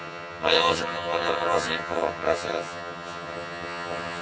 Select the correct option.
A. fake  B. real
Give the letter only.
A